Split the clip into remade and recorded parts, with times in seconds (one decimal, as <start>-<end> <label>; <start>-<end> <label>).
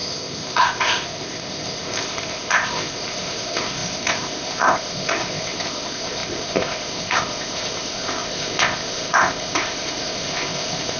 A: 0.0-11.0 remade